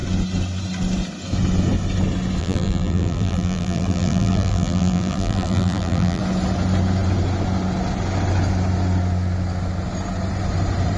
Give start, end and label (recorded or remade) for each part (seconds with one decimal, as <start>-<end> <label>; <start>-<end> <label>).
0.0-2.4 recorded; 2.4-6.2 remade; 6.2-11.0 recorded